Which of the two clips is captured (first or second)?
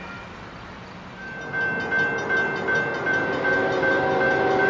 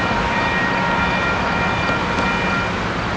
second